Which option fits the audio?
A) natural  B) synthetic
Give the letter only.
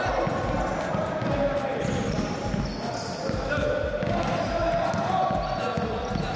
A